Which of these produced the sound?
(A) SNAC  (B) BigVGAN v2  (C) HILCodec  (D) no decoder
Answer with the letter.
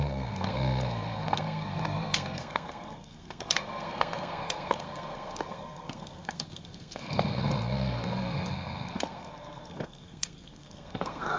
A